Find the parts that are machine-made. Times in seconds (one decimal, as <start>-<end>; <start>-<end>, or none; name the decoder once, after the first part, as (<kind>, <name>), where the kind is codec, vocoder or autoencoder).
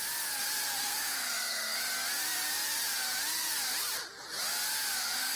0.8-1.8 (codec, SNAC); 5.0-5.4